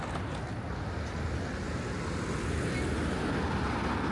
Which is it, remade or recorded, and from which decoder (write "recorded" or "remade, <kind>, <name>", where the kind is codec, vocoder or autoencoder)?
recorded